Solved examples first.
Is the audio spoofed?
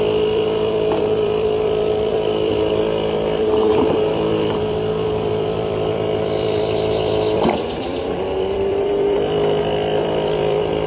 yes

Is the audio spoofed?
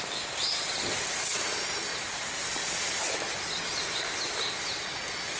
no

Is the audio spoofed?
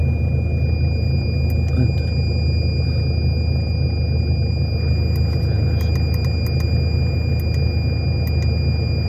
no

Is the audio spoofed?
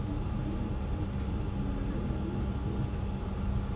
no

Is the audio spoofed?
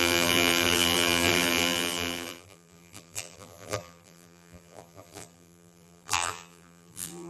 yes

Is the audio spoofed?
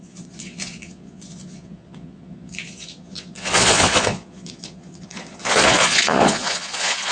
yes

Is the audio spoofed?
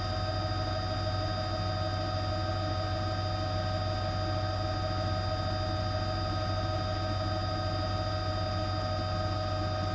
no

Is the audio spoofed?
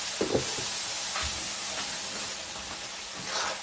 no